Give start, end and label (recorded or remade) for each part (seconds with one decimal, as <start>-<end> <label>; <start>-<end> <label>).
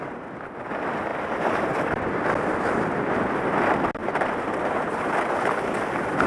0.0-1.1 recorded; 1.1-2.0 remade; 2.0-4.0 recorded; 4.0-5.1 remade; 5.1-6.3 recorded